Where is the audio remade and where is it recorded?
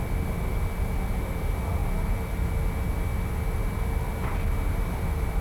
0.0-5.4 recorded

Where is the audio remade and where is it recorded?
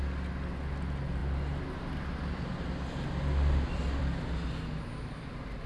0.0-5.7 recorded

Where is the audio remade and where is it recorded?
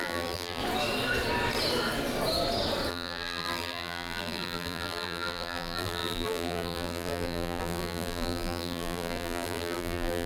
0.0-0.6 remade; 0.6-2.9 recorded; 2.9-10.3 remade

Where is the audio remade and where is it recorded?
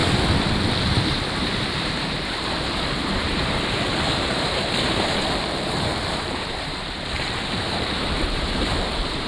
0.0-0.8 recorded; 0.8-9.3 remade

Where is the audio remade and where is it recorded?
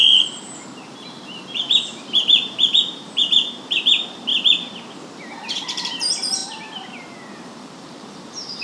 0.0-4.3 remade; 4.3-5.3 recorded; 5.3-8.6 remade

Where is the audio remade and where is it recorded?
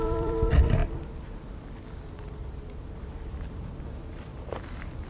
0.0-4.3 remade; 4.3-5.1 recorded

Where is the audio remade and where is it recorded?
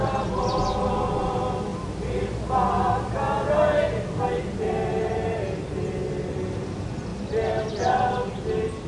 0.0-8.9 recorded